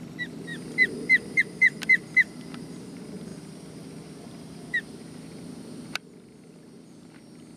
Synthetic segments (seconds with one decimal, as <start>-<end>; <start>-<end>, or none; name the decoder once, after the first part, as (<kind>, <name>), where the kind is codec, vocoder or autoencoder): 0.0-7.6 (vocoder, BigVGAN v2)